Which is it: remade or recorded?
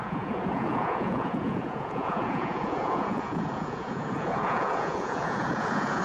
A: remade